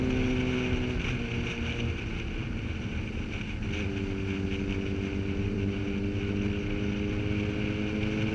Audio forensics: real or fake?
real